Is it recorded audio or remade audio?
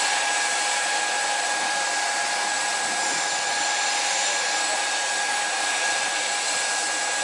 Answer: recorded